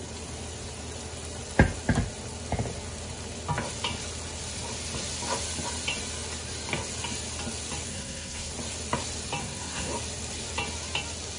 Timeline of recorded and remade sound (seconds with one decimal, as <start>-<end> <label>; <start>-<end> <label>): 0.0-7.9 recorded; 7.9-8.5 remade; 8.5-9.4 recorded; 9.4-9.9 remade; 9.9-11.4 recorded